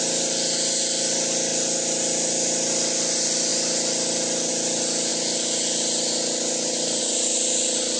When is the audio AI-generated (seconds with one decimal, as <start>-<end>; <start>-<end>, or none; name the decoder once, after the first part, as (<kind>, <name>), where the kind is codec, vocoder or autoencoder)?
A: none